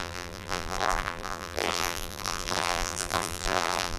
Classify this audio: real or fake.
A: fake